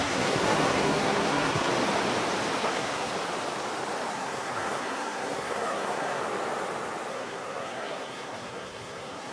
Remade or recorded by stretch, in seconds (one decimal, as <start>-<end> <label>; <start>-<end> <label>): 0.0-1.7 remade; 1.7-2.6 recorded; 2.6-3.1 remade; 3.1-4.1 recorded; 4.1-6.2 remade; 6.2-7.1 recorded; 7.1-9.3 remade